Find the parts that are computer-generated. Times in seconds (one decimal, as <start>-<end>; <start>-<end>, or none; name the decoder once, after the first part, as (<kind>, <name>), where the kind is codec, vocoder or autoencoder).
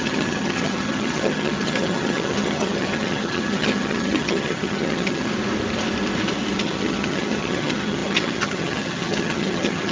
0.0-5.3 (vocoder, HiFi-GAN); 6.6-9.9